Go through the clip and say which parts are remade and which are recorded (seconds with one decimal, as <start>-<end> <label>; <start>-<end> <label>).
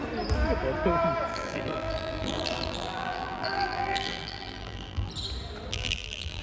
0.0-1.3 recorded; 1.3-5.1 remade; 5.1-5.7 recorded; 5.7-6.4 remade